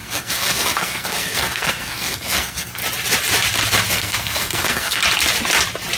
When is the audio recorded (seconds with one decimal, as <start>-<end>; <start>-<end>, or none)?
2.8-3.9; 5.0-6.0